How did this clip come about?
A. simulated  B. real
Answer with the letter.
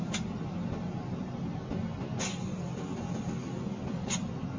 B